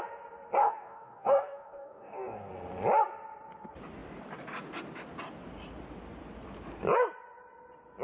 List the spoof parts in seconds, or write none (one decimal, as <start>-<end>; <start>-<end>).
0.6-2.5